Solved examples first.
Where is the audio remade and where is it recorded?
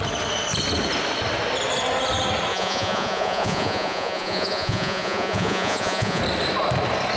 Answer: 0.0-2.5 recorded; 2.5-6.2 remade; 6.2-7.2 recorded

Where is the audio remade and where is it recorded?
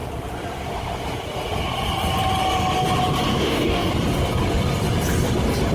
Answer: 0.0-3.3 recorded; 3.3-3.9 remade; 3.9-5.7 recorded